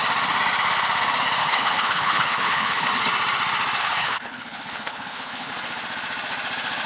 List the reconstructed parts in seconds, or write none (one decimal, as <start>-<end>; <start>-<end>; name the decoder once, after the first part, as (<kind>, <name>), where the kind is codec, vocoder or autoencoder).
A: 1.4-2.9 (codec, HILCodec); 3.8-5.5